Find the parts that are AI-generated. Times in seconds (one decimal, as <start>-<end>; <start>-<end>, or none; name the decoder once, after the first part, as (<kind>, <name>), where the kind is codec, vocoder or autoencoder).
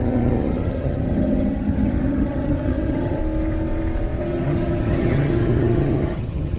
0.0-3.2 (vocoder, HiFi-GAN); 4.2-6.6